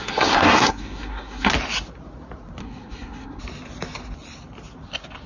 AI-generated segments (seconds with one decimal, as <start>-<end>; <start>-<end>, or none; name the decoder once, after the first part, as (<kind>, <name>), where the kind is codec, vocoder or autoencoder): 0.0-1.5 (codec, SNAC); 2.6-3.4

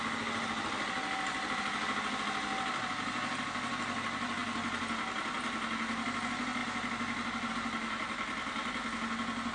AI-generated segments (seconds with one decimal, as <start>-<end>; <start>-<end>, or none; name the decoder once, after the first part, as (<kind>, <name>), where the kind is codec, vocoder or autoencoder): none

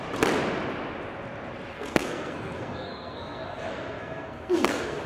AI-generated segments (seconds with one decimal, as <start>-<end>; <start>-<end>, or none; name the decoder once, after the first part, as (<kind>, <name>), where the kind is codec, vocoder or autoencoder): 1.7-5.1 (codec, SNAC)

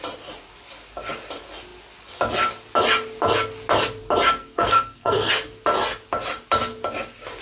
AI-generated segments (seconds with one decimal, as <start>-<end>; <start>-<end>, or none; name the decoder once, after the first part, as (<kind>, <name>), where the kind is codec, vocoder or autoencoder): 4.4-5.3 (codec, SNAC)

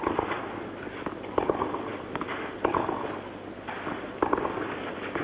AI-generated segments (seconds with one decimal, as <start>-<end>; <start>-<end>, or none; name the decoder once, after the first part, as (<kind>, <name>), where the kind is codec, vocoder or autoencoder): none

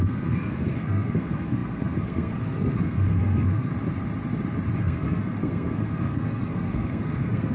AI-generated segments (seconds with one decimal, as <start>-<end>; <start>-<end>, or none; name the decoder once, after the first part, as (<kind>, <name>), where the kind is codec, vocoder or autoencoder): 0.0-3.7 (codec, SNAC); 4.8-7.5

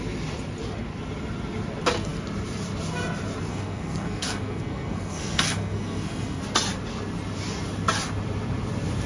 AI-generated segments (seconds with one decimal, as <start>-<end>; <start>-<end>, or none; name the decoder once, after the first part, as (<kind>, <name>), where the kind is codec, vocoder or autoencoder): 3.5-6.4 (codec, SNAC)

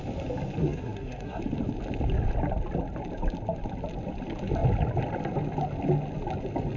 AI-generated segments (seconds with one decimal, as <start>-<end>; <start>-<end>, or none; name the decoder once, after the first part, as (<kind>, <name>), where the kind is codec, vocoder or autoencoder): 0.6-1.4 (codec, SNAC)